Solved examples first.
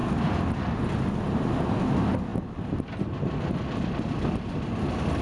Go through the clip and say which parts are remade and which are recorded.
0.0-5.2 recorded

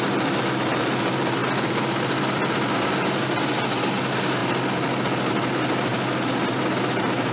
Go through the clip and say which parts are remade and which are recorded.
0.0-7.3 recorded

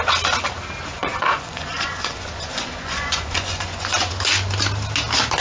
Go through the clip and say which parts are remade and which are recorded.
0.0-0.9 recorded; 0.9-4.1 remade; 4.1-5.4 recorded

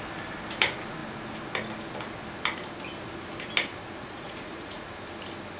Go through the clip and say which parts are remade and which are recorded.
0.0-4.0 recorded; 4.0-4.9 remade; 4.9-5.6 recorded